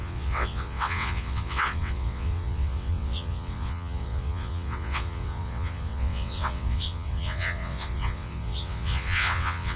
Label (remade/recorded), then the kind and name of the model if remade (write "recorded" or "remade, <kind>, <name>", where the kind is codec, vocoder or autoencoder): remade, vocoder, WaveNeXt